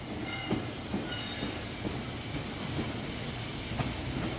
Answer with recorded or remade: recorded